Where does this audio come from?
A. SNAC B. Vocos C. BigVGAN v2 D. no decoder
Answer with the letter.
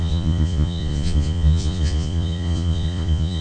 B